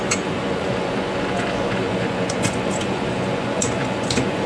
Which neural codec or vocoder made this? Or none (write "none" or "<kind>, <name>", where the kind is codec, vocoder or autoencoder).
vocoder, Vocos